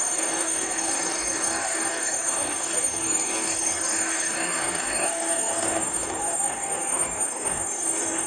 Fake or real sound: fake